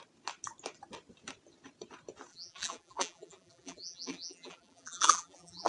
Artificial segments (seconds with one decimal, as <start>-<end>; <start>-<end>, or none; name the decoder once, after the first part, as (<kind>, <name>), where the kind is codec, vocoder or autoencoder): 2.3-5.7 (vocoder, BigVGAN v2)